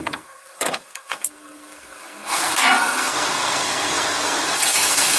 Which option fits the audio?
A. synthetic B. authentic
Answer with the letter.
A